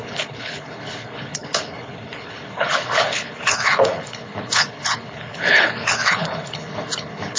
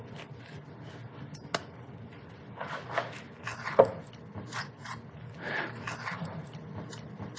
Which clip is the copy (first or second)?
first